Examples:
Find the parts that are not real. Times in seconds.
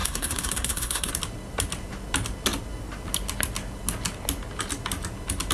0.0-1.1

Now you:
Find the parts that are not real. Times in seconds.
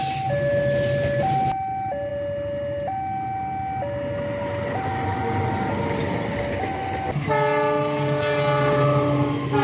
none